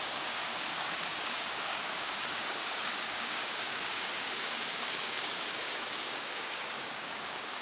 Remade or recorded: remade